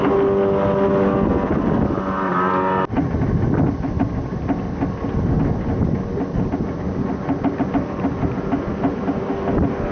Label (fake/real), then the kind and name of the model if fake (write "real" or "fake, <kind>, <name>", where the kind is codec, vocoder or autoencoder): real